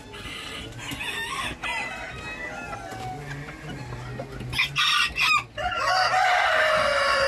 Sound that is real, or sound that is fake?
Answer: real